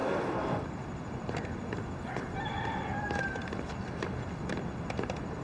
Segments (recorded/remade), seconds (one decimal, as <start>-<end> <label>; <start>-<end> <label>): 0.0-5.4 recorded